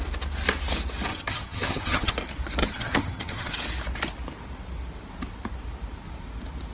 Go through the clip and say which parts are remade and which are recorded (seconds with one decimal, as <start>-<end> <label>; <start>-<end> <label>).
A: 0.0-1.1 recorded; 1.1-2.1 remade; 2.1-2.6 recorded; 2.6-3.5 remade; 3.5-6.7 recorded